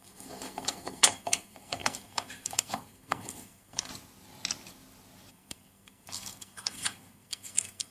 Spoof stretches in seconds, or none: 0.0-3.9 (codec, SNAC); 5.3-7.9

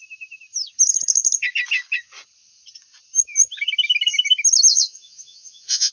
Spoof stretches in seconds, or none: 4.7-5.9 (vocoder, Vocos)

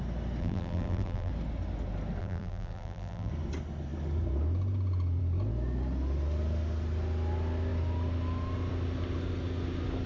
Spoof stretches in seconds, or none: 0.4-1.3 (vocoder, BigVGAN v2); 2.2-3.3